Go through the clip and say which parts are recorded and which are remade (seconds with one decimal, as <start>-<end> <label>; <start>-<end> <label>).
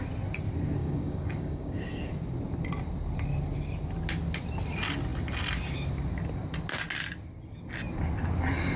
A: 0.0-0.8 recorded; 0.8-2.1 remade; 2.1-8.8 recorded